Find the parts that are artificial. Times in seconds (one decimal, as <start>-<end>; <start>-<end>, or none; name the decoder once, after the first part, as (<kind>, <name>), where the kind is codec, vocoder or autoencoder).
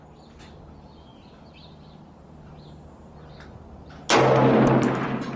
none